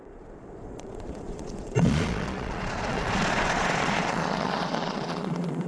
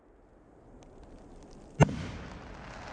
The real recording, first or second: second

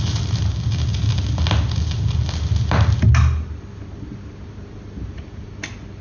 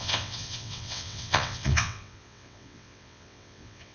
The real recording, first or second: first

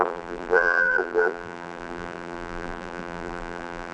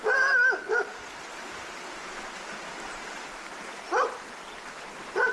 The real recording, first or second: second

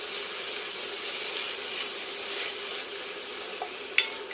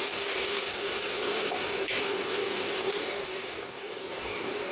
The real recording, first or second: first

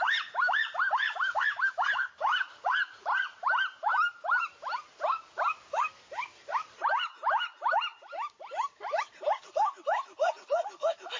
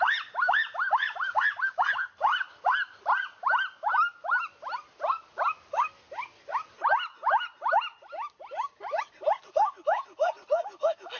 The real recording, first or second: second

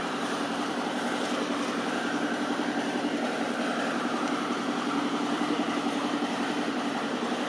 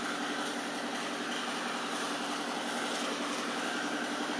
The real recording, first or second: second